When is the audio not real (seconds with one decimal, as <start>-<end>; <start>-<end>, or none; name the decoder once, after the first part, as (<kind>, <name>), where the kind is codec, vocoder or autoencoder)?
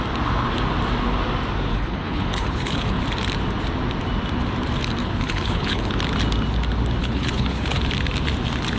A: 1.7-3.0 (codec, HILCodec); 5.0-5.9; 7.0-7.8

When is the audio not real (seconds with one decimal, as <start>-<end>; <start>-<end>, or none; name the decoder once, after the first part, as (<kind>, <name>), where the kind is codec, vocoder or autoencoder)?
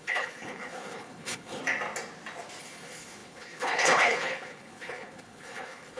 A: 0.0-1.6 (codec, HILCodec); 2.6-6.0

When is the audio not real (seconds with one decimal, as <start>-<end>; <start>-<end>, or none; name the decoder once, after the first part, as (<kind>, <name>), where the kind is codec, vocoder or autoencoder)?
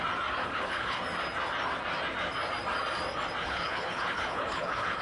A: 0.4-1.0 (codec, HILCodec); 3.4-5.0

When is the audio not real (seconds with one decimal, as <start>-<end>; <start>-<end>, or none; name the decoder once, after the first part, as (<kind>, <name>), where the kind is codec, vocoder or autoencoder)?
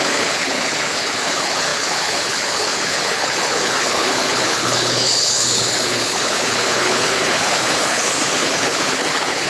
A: 0.0-9.5 (codec, HILCodec)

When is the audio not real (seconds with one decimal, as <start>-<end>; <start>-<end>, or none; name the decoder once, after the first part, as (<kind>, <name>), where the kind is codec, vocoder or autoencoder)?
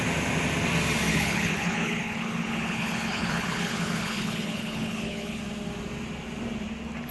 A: 1.1-5.4 (codec, HILCodec)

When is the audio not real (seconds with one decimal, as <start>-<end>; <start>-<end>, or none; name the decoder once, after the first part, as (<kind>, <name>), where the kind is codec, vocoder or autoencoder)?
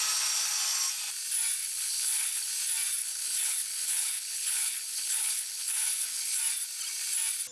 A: 1.6-2.5 (codec, HILCodec); 3.0-6.4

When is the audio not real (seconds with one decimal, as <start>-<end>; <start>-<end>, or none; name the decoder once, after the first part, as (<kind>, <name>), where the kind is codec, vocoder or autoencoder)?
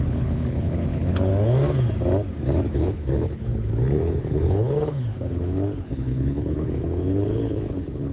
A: 0.0-1.3 (codec, HILCodec); 2.7-8.1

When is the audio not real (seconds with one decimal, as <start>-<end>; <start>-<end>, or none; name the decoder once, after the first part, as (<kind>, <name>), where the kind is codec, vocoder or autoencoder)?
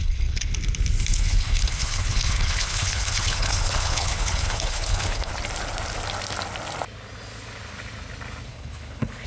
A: 0.0-0.5 (codec, HILCodec); 1.1-5.3; 8.5-9.3